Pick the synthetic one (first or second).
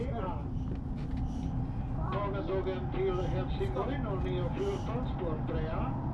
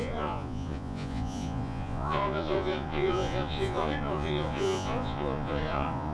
second